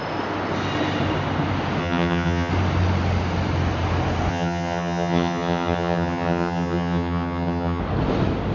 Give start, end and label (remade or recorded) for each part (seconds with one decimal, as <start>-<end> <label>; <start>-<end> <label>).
0.0-1.8 recorded; 1.8-2.5 remade; 2.5-4.3 recorded; 4.3-7.8 remade; 7.8-8.5 recorded